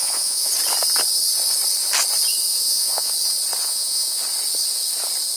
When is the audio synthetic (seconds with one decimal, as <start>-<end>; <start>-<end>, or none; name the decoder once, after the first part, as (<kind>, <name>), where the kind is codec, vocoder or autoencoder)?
0.0-0.5 (vocoder, Vocos); 2.5-3.1; 3.6-4.2